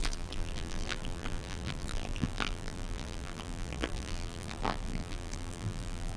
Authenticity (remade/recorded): remade